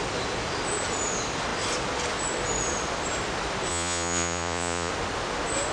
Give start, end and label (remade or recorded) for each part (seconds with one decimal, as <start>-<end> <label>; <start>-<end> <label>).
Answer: 0.0-3.7 recorded; 3.7-4.9 remade; 4.9-5.7 recorded